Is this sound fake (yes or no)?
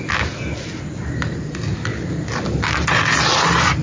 no